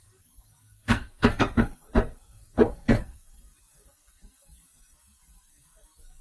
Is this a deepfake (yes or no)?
yes